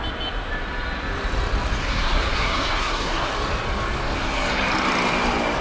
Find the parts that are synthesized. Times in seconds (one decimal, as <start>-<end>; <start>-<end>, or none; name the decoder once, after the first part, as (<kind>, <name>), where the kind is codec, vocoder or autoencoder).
1.8-3.3 (codec, SNAC)